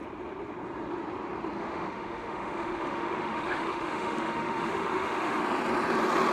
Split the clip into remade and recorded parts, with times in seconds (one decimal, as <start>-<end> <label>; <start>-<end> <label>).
0.0-1.6 recorded; 1.6-5.4 remade; 5.4-6.3 recorded